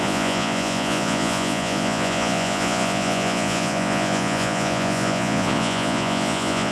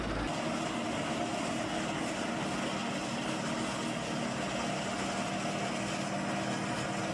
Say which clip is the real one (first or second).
second